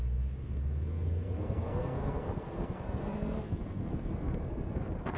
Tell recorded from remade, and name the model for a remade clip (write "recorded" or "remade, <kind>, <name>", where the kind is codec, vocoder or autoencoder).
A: remade, codec, SNAC